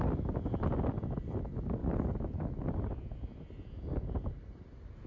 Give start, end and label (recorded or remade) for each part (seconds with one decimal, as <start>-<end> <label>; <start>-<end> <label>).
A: 0.0-5.1 recorded